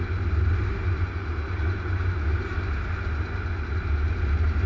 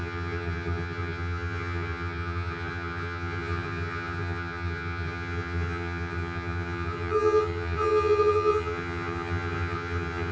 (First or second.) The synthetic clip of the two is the second